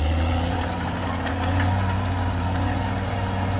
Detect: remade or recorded recorded